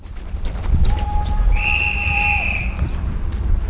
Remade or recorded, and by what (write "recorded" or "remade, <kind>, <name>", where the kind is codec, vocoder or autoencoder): remade, vocoder, BigVGAN v2